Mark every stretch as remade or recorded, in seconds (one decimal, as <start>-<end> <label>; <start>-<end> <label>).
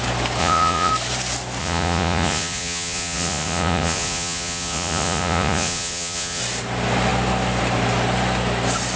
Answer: 0.0-0.4 recorded; 0.4-0.9 remade; 0.9-1.6 recorded; 1.6-6.4 remade; 6.4-9.0 recorded